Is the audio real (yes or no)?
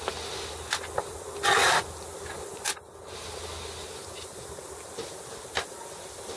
yes